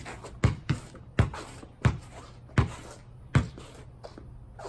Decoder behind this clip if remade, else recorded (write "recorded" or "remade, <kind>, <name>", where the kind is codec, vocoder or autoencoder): recorded